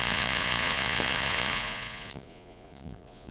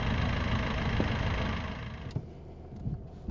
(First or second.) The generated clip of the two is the first